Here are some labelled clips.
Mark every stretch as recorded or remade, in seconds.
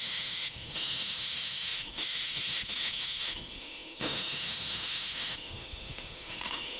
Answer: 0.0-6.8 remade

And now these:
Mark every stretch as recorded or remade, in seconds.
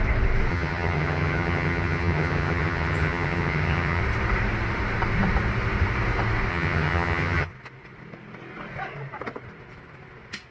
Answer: 0.0-0.5 recorded; 0.5-4.0 remade; 4.0-6.5 recorded; 6.5-7.5 remade; 7.5-10.5 recorded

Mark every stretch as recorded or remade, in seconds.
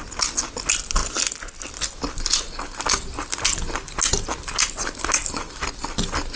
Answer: 0.0-6.4 recorded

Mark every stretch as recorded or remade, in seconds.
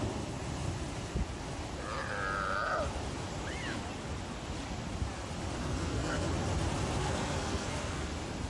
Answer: 0.0-5.6 recorded; 5.6-6.3 remade; 6.3-7.0 recorded; 7.0-8.1 remade; 8.1-8.5 recorded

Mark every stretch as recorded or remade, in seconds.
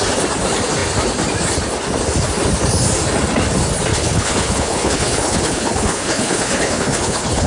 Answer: 0.0-3.9 recorded; 3.9-7.5 remade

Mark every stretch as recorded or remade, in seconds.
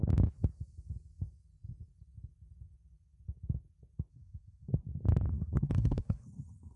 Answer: 0.0-4.1 recorded; 4.1-4.7 remade; 4.7-5.3 recorded; 5.3-6.8 remade